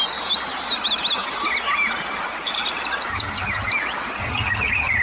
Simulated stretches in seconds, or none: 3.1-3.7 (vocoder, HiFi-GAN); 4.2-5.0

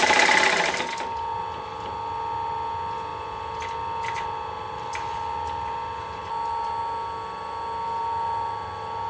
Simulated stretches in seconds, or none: 3.1-3.6 (vocoder, BigVGAN v2)

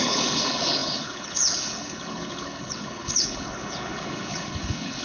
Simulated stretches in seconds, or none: 0.0-5.0 (codec, HILCodec)

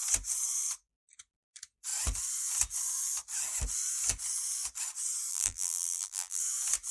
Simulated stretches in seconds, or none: 5.3-6.4 (vocoder, BigVGAN v2)